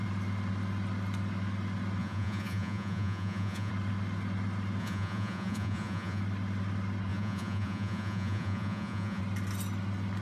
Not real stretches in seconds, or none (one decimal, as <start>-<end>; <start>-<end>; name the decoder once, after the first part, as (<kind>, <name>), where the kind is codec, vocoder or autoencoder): 2.0-3.7 (vocoder, Vocos); 4.8-6.2; 7.1-9.2